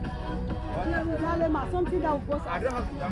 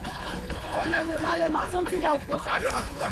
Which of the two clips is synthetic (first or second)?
second